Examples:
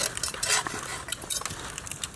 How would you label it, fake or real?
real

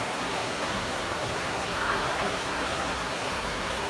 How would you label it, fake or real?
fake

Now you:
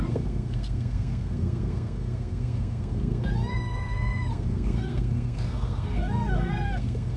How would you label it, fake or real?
fake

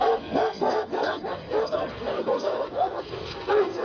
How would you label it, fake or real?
fake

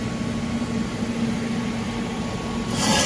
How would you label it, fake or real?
real